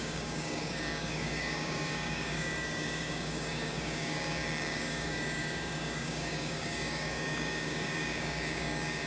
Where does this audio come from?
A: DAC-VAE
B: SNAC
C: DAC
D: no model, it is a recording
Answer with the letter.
C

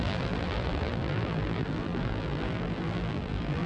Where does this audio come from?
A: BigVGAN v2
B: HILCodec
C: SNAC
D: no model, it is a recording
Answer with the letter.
A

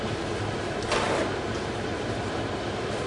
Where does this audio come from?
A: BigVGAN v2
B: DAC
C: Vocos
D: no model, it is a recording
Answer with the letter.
A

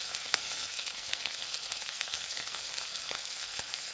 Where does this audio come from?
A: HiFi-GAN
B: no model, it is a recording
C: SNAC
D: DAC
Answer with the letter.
C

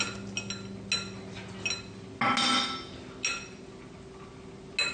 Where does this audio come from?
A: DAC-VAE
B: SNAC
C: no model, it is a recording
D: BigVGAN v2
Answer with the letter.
C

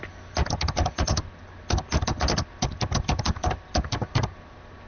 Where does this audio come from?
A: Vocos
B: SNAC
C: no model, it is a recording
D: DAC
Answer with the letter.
C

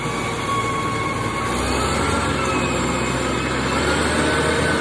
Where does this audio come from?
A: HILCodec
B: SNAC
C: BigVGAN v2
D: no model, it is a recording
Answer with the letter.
D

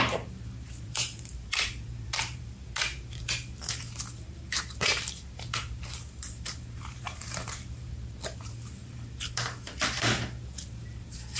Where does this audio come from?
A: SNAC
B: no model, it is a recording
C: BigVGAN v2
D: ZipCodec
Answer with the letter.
C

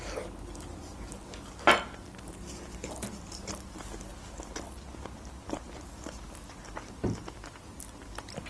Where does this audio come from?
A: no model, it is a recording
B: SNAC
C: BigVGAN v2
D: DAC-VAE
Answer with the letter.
A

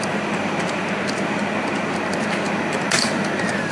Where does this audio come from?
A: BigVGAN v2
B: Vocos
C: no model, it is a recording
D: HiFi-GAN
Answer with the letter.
C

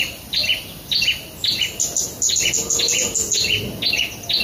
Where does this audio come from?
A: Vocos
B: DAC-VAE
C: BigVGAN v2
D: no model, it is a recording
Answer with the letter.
D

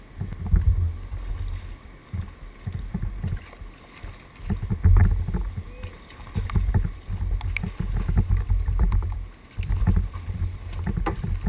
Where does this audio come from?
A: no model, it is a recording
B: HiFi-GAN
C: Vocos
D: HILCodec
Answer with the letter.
A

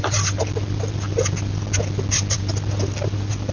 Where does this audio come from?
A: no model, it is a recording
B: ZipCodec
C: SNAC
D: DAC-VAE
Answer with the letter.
A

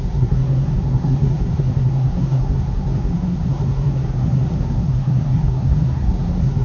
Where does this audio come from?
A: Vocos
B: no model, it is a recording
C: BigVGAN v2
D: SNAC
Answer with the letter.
D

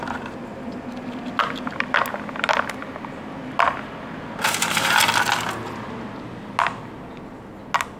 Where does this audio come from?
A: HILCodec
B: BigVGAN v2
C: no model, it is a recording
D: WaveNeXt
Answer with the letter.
C